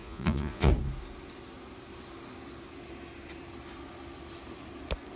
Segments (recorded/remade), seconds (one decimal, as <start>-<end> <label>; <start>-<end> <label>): 0.0-0.7 remade; 0.7-5.2 recorded